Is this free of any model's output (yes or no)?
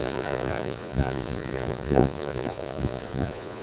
no